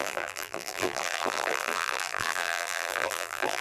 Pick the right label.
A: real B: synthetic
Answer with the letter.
B